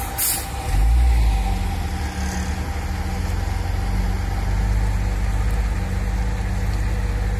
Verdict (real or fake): real